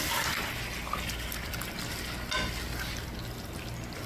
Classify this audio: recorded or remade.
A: recorded